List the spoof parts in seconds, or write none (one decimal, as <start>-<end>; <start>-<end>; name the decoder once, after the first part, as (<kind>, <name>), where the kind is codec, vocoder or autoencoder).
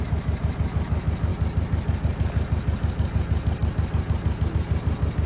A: none